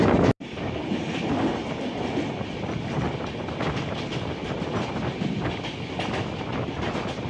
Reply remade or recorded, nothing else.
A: recorded